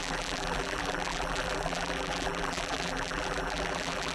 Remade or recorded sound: remade